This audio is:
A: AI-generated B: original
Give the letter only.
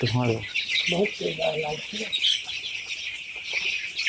B